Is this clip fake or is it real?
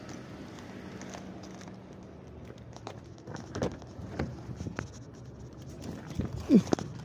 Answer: real